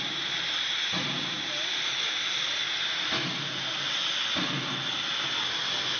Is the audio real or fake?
real